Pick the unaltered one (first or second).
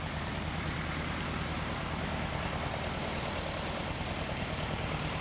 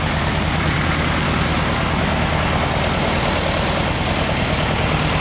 second